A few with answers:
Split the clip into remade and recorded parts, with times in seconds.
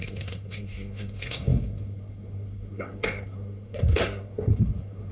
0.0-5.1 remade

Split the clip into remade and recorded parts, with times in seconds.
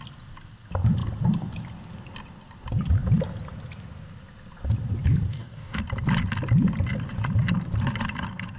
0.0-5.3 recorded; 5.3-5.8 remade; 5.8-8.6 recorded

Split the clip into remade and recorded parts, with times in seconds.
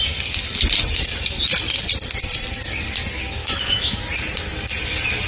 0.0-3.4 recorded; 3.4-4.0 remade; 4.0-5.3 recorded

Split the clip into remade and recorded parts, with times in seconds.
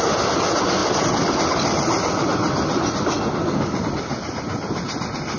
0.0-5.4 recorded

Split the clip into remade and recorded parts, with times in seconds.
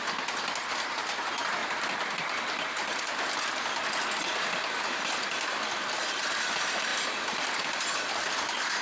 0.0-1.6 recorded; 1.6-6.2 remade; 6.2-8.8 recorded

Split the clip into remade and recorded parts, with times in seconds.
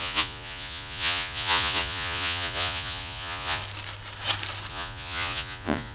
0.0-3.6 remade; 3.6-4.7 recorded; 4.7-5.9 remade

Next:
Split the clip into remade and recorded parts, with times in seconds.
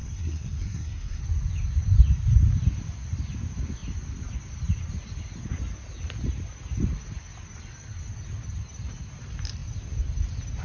0.0-1.2 remade; 1.2-10.6 recorded